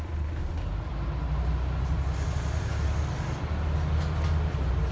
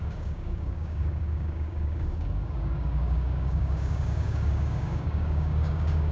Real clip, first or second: first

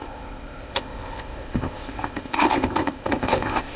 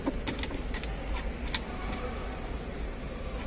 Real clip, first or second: second